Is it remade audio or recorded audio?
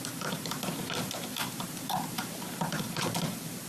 remade